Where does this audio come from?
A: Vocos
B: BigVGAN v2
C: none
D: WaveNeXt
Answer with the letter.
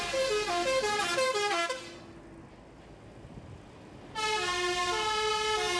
C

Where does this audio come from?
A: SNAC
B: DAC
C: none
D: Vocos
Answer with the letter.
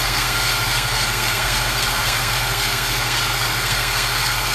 A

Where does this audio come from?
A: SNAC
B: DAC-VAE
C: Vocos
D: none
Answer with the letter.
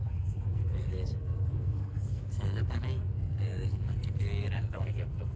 A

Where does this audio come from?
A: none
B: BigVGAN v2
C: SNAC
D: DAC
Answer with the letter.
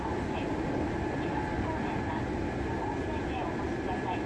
A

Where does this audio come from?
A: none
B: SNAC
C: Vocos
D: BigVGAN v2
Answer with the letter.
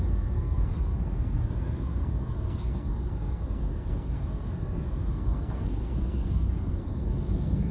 B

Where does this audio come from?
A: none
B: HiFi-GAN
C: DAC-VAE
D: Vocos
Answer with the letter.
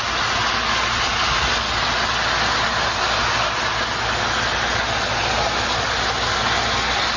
A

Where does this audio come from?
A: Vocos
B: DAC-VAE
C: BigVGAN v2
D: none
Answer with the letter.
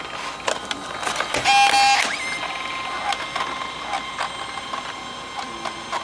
D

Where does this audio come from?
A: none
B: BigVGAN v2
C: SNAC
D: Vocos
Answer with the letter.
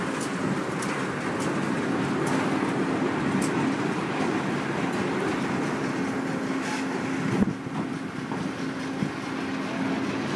A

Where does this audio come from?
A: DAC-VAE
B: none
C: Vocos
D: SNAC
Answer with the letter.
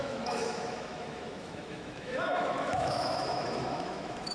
A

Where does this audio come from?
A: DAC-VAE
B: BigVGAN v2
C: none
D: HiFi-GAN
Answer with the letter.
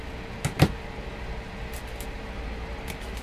C